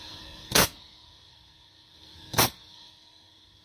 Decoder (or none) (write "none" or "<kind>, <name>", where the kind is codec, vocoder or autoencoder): codec, SNAC